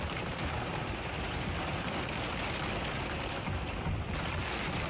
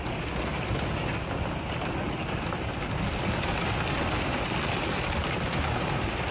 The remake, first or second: first